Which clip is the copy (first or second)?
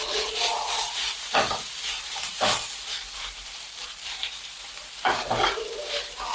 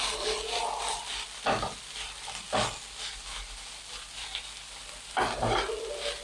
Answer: first